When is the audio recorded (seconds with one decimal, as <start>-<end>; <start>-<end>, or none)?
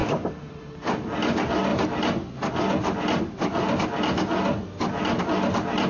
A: 0.7-5.9